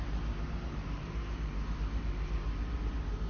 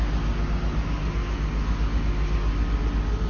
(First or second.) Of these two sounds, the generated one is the first